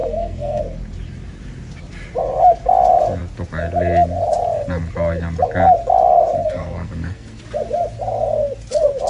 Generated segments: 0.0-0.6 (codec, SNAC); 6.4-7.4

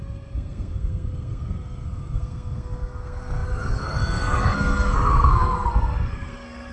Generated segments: 0.0-6.7 (codec, SNAC)

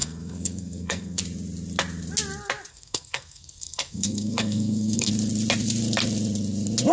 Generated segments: 0.0-1.2 (codec, SNAC); 2.7-5.1

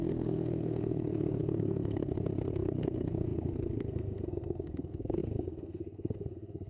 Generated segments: 0.0-6.7 (codec, SNAC)

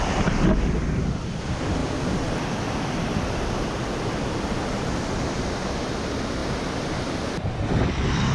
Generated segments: none

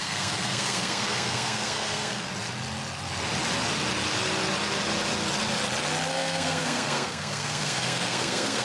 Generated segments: 0.0-2.3 (codec, SNAC); 6.1-8.6

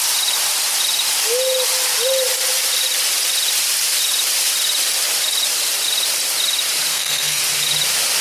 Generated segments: 6.9-7.4 (codec, SNAC)